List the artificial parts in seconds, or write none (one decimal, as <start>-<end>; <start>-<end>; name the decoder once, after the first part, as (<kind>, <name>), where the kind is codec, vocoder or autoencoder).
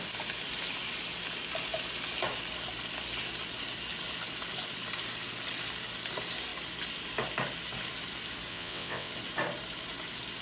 8.5-9.1 (vocoder, WaveNeXt)